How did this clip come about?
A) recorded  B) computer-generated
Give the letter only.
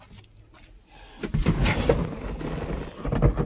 A